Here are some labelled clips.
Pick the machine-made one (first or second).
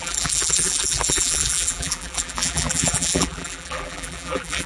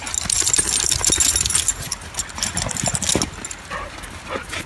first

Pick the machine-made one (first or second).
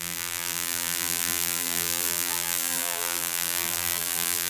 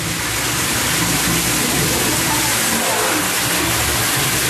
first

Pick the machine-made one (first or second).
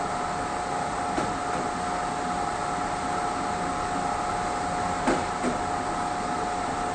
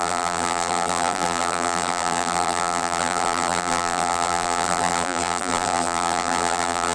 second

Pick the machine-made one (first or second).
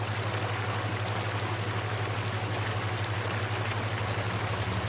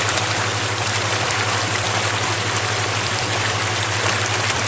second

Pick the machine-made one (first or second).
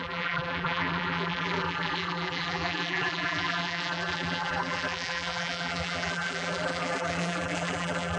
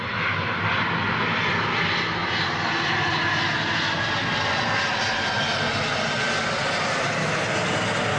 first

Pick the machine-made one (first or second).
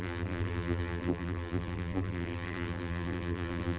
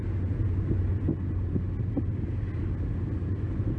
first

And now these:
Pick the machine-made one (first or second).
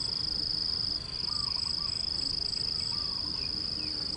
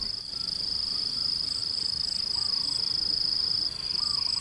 second